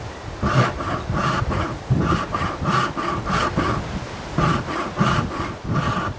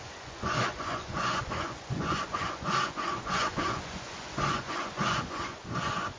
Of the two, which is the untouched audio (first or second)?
first